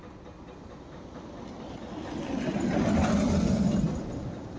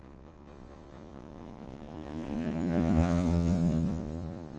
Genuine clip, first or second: first